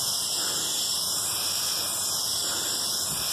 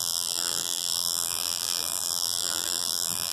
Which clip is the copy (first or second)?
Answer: second